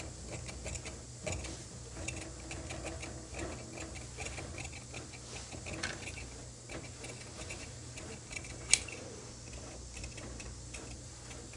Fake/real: real